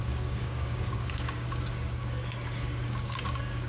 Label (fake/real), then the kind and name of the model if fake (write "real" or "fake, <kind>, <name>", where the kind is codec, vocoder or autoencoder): fake, codec, DAC